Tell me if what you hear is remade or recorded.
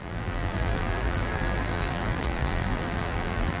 remade